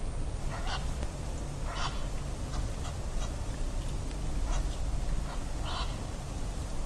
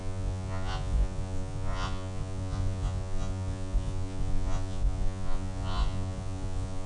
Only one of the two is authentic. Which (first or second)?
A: first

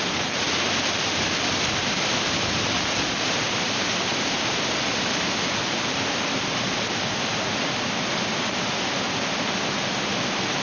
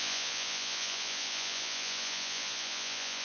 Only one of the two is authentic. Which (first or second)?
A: first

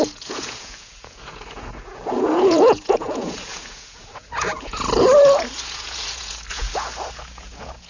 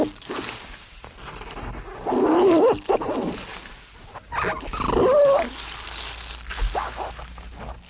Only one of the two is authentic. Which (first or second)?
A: second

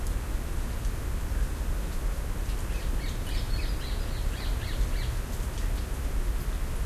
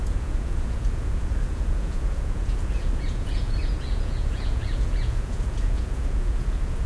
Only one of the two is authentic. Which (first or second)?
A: first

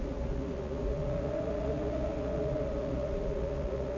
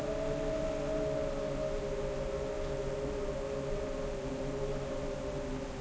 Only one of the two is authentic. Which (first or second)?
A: second